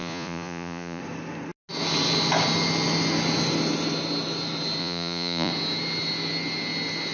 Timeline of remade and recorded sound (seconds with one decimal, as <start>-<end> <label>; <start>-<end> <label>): 0.0-1.0 remade; 1.0-4.8 recorded; 4.8-5.5 remade; 5.5-7.1 recorded